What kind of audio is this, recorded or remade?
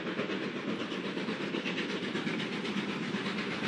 recorded